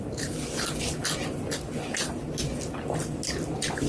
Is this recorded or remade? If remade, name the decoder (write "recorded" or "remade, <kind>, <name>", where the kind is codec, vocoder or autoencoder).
recorded